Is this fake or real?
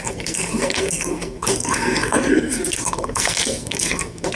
fake